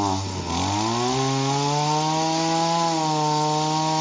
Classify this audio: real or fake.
real